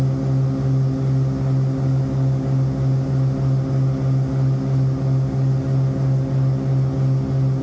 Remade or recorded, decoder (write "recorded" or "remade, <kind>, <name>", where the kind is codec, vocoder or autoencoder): recorded